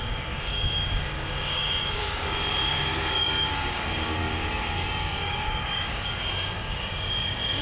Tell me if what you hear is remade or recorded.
remade